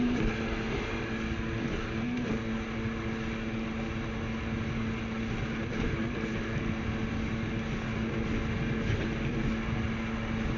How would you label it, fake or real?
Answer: real